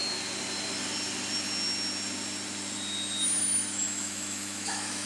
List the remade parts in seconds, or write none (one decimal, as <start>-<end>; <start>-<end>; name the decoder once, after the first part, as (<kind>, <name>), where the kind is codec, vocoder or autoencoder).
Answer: 3.4-5.1 (autoencoder, DAC-VAE)